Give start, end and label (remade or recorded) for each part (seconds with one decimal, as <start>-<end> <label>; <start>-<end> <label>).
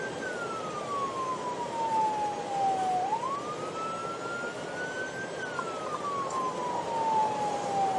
0.0-8.0 recorded